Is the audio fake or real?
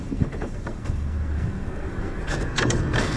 fake